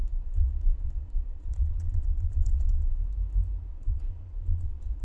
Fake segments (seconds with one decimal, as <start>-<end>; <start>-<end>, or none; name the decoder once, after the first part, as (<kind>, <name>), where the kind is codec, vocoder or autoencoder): 0.0-3.0 (vocoder, Vocos); 3.7-5.0